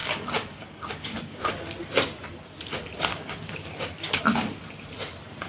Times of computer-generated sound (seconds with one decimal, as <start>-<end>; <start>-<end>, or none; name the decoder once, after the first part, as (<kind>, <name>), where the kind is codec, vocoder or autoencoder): 0.0-1.5 (codec, DAC); 3.1-4.2